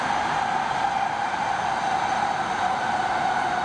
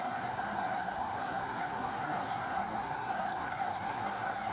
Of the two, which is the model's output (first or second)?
second